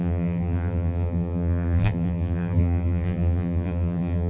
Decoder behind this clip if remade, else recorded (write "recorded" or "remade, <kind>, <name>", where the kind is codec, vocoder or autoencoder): remade, vocoder, BigVGAN v2